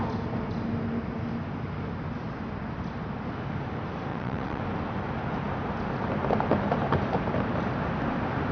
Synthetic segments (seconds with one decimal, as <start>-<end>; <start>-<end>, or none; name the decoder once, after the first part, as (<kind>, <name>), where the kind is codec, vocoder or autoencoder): 4.1-4.6 (vocoder, WaveNeXt)